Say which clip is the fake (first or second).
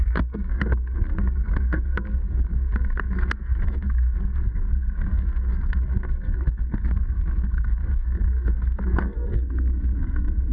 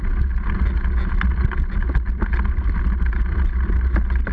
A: first